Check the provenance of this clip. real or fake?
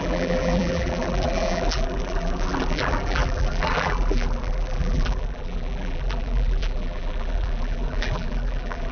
fake